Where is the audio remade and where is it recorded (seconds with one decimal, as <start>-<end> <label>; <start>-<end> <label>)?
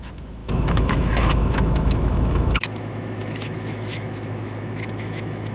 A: 0.0-5.5 remade